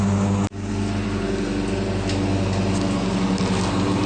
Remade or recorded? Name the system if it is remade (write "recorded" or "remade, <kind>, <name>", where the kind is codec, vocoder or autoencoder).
recorded